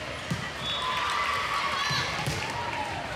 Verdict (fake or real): real